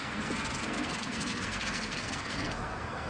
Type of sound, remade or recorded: remade